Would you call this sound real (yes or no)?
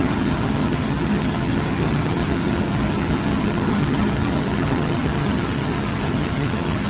no